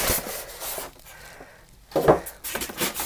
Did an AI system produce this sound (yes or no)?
no